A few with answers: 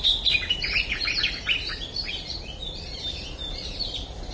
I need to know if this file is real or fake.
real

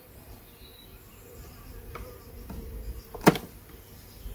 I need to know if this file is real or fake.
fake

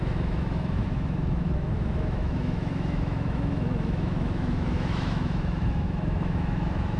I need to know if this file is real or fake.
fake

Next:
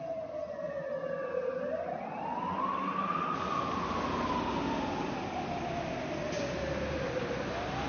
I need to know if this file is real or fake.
real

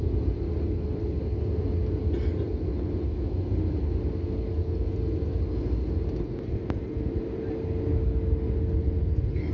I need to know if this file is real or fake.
real